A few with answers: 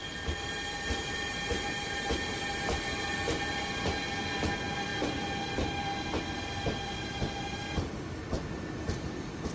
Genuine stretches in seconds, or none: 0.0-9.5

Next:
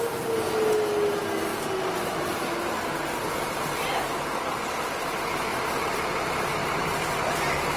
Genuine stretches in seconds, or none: 0.0-1.5; 4.4-6.6

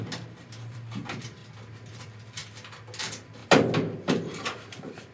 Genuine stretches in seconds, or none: 1.4-1.9; 2.4-3.0; 3.4-4.0